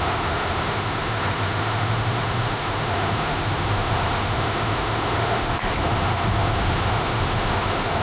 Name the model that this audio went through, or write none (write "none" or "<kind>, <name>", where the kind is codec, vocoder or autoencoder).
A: autoencoder, DAC-VAE